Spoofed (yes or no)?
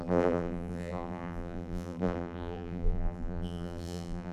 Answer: yes